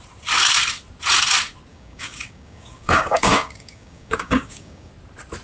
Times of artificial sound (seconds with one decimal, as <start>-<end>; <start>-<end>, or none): 1.7-4.9